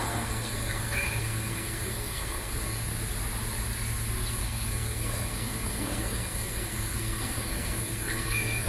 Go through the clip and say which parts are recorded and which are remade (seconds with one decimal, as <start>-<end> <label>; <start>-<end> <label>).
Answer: 0.0-2.9 remade; 2.9-4.3 recorded; 4.3-8.7 remade

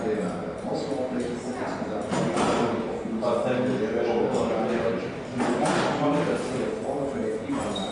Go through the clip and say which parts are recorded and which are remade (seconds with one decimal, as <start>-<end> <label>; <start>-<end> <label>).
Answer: 0.0-7.9 recorded

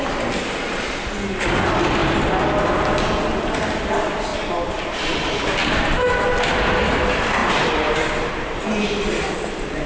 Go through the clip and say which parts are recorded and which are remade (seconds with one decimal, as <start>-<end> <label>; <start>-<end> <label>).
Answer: 0.0-4.3 recorded; 4.3-5.4 remade; 5.4-7.4 recorded; 7.4-9.1 remade; 9.1-9.9 recorded

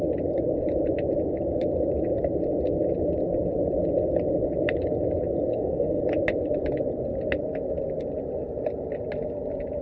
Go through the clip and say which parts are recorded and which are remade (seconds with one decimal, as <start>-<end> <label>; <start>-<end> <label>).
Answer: 0.0-5.5 recorded; 5.5-6.0 remade; 6.0-9.8 recorded

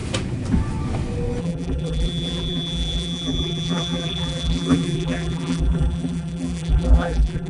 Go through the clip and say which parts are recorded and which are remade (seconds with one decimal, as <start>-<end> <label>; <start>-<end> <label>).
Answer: 0.0-1.4 recorded; 1.4-7.5 remade

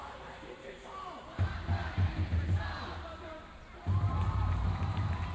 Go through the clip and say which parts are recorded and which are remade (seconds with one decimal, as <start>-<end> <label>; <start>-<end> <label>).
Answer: 0.0-5.3 remade

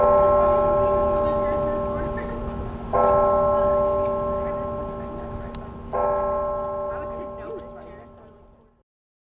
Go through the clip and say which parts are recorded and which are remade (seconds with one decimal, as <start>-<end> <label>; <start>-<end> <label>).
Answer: 0.0-9.3 recorded